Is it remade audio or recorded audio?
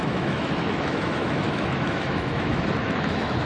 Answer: remade